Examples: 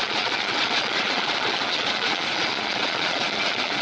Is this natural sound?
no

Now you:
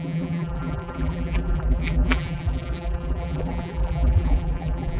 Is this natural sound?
no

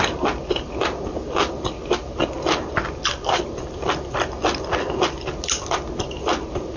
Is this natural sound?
yes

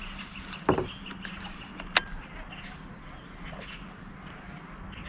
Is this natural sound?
yes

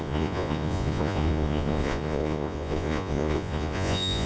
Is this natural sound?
no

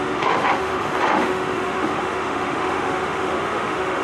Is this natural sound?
no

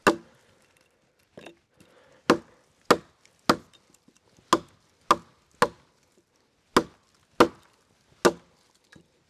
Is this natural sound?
yes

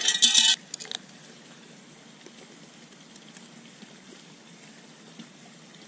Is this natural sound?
yes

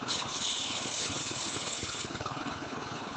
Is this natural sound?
no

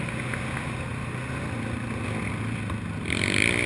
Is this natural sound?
yes